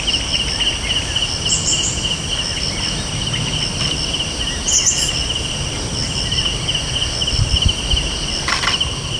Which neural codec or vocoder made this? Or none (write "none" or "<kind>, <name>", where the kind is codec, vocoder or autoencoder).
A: none